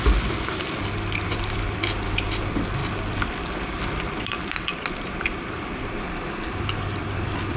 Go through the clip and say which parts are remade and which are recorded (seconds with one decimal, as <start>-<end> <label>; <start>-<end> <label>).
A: 0.0-2.8 recorded; 2.8-7.6 remade